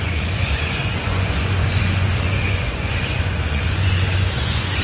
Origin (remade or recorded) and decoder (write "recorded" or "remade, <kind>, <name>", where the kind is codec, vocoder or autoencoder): remade, vocoder, Vocos